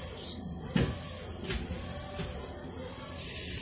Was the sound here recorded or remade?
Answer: recorded